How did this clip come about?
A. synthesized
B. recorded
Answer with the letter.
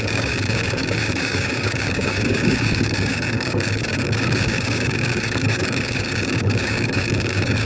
A